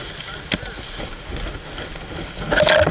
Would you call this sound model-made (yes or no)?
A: no